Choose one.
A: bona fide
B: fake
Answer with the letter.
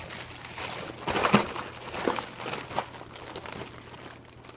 A